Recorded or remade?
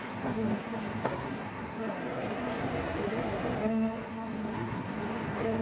remade